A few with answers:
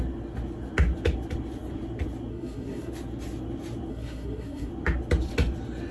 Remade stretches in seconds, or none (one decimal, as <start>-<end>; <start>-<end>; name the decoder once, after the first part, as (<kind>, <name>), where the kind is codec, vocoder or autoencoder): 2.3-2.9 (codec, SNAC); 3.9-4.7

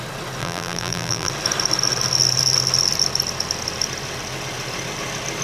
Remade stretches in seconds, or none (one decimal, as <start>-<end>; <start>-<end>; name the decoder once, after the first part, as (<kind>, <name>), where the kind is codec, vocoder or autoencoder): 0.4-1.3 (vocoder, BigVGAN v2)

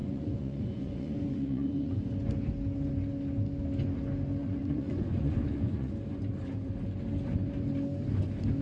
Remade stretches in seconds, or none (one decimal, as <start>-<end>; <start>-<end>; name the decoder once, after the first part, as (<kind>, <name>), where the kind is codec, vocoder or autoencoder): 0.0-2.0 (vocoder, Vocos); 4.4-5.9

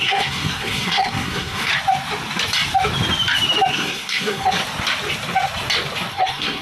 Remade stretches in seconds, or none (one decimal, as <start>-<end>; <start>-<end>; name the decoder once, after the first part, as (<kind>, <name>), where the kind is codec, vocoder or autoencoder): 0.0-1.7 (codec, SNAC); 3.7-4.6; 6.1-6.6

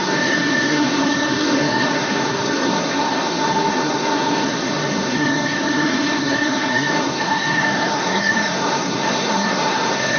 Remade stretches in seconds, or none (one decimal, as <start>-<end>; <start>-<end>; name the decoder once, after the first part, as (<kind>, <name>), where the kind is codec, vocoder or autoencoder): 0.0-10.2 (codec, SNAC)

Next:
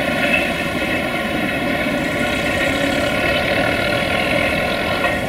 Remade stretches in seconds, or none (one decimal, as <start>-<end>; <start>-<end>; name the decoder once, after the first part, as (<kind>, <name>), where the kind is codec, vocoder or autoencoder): 0.0-1.1 (vocoder, BigVGAN v2); 4.3-5.3

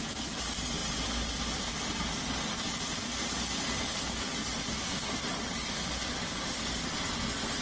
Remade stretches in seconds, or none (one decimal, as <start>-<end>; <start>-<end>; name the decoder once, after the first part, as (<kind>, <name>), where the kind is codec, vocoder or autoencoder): none

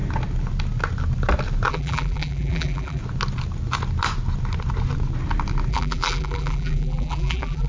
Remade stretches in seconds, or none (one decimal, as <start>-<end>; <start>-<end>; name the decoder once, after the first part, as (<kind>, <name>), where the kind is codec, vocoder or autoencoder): 1.7-3.0 (vocoder, BigVGAN v2); 5.7-7.7